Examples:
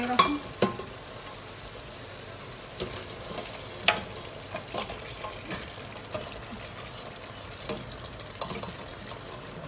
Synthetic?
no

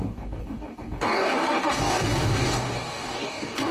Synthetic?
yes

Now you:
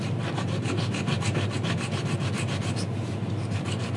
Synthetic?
no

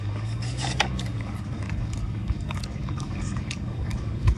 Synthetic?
yes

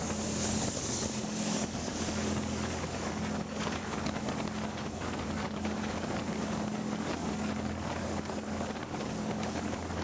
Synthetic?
yes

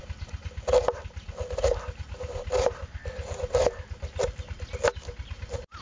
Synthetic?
no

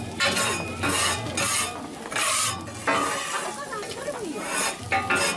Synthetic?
no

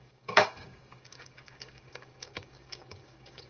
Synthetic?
yes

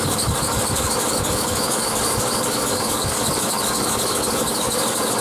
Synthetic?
yes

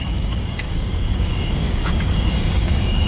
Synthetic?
yes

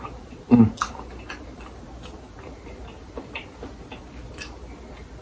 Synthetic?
no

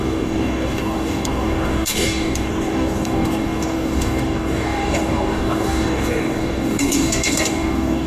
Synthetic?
yes